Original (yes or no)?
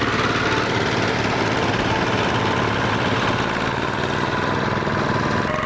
yes